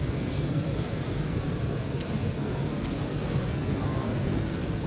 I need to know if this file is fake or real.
fake